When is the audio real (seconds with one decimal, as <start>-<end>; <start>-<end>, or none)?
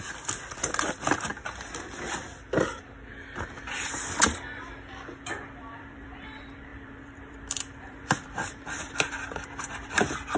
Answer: 1.3-5.6